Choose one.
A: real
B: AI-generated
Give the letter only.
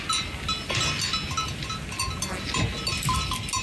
A